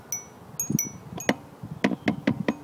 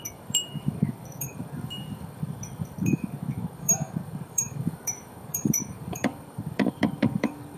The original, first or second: first